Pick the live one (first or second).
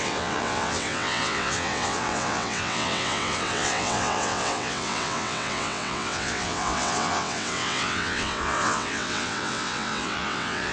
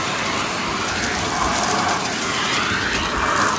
second